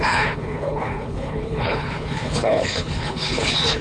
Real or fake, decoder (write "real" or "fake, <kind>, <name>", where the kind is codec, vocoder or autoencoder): fake, codec, HILCodec